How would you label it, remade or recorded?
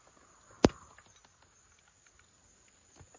recorded